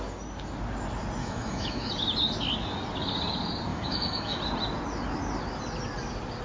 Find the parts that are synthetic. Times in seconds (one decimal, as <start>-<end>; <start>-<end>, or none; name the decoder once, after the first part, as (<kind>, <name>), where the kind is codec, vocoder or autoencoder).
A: 1.2-1.9 (autoencoder, DAC-VAE); 3.7-4.4